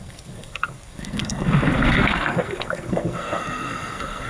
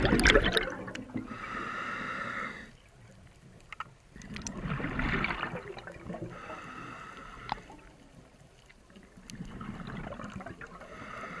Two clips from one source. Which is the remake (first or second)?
first